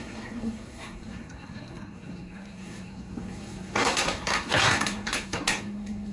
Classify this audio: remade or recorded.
remade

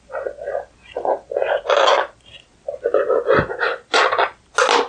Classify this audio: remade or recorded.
recorded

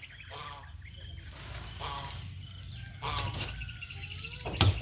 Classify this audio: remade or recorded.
recorded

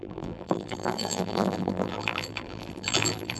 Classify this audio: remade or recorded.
remade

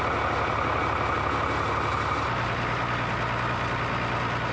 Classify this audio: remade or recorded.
recorded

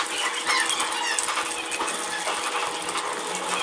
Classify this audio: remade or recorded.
recorded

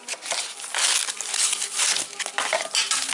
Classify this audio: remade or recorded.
recorded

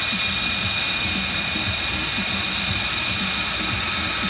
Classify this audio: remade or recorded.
recorded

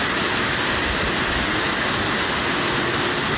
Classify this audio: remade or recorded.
recorded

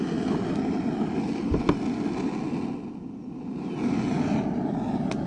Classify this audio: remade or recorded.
recorded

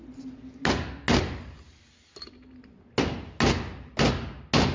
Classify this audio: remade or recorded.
recorded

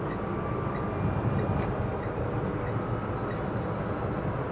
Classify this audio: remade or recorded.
recorded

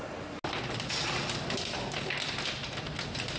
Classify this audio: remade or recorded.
recorded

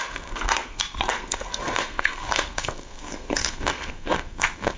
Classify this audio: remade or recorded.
remade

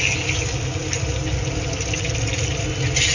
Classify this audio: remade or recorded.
recorded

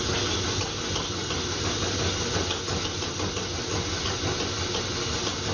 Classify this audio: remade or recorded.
recorded